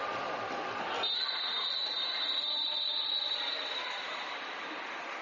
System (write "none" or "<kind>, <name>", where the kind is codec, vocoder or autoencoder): vocoder, BigVGAN v2